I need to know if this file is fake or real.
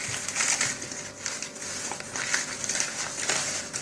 real